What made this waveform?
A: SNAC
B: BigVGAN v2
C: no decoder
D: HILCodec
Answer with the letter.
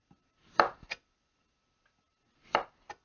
C